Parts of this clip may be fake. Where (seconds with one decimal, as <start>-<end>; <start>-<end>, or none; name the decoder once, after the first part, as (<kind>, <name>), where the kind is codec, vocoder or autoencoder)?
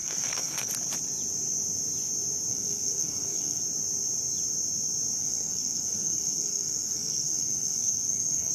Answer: 0.0-0.7 (codec, SNAC); 2.5-3.6; 5.2-8.5